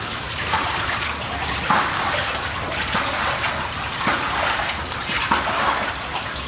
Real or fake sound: fake